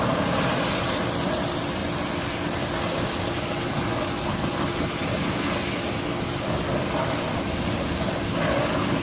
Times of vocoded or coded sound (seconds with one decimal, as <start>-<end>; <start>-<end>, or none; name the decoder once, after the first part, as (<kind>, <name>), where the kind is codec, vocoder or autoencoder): none